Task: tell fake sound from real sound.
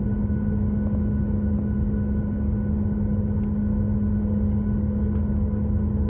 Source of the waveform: real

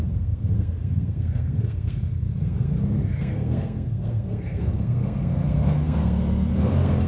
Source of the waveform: fake